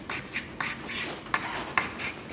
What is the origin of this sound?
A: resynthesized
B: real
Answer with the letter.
B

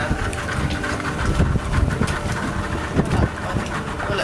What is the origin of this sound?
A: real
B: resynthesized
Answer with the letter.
A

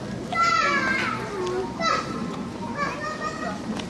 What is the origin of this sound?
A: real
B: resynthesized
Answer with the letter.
A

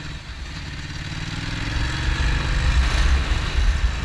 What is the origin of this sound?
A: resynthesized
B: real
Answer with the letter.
B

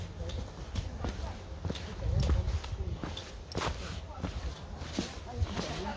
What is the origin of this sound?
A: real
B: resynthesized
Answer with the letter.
A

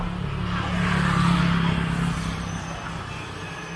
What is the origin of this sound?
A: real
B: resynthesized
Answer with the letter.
A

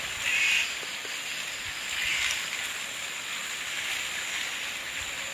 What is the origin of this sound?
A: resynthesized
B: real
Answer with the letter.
B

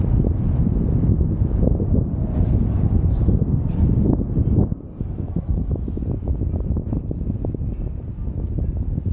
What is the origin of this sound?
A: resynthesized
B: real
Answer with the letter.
B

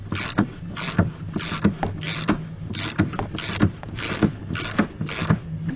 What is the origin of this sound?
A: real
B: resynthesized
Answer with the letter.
A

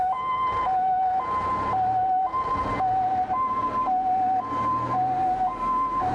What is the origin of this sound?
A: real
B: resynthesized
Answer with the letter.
A